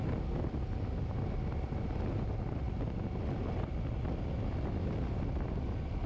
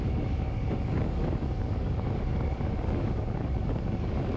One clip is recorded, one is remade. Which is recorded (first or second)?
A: first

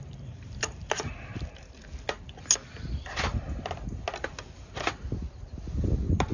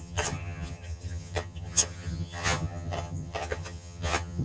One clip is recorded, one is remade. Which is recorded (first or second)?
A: first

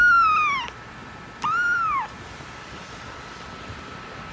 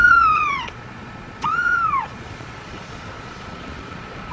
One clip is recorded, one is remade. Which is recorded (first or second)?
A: first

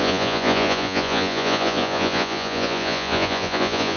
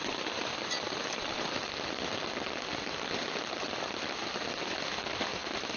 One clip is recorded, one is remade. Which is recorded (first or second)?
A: second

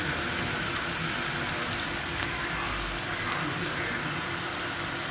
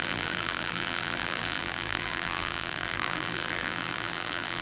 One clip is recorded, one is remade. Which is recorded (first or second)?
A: first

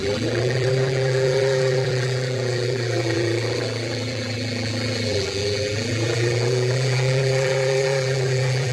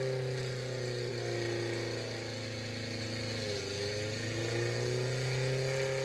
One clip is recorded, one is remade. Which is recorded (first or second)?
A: second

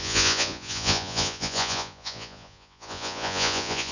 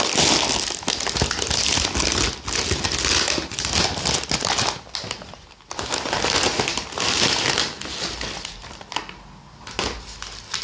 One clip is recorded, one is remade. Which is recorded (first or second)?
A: second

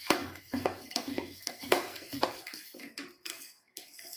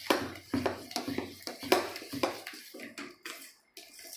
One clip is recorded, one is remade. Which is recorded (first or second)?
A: second